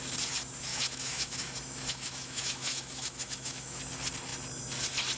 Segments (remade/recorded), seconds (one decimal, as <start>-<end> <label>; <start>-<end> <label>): 0.0-0.7 recorded; 0.7-3.8 remade; 3.8-5.2 recorded